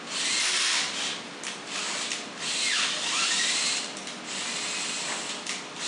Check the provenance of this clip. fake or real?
real